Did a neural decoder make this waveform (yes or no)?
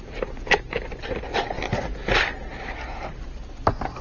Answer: no